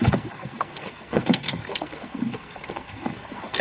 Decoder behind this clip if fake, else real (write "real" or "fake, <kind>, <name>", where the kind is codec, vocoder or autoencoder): fake, codec, SNAC